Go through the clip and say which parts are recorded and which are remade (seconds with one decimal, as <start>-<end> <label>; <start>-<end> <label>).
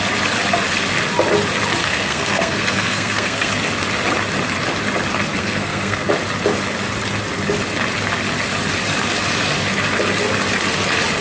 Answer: 0.0-1.8 recorded; 1.8-3.5 remade; 3.5-5.4 recorded; 5.4-6.1 remade; 6.1-11.2 recorded